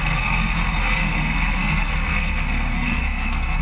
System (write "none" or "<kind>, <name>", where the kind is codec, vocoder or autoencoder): codec, SNAC